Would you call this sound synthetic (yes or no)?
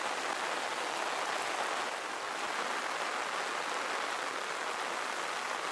no